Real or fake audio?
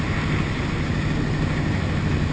real